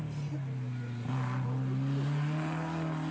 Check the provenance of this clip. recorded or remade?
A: recorded